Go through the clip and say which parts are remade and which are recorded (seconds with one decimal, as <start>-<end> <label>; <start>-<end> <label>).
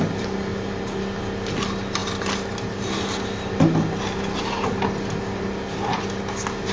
0.0-6.7 recorded